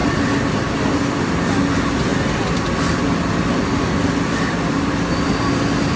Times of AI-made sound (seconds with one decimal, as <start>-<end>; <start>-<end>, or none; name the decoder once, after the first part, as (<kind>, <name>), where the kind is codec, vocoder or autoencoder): none